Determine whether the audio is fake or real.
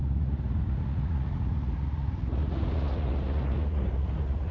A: fake